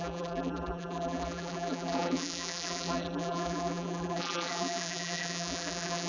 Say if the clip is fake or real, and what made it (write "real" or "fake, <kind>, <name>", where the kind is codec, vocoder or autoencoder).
fake, vocoder, BigVGAN v2